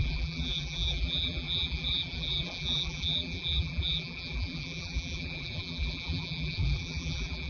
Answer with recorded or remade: remade